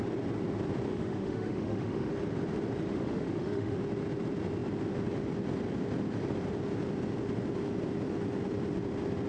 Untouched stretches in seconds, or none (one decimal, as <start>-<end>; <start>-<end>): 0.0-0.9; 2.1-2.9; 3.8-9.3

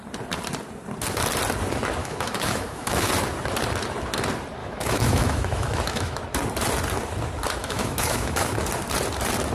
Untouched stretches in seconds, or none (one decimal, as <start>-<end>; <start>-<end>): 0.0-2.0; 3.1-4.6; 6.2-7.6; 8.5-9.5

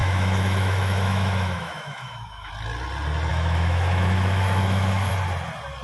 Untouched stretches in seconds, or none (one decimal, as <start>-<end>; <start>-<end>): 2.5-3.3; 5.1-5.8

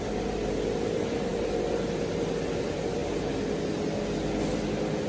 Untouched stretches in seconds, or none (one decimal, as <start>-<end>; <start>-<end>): 0.0-5.1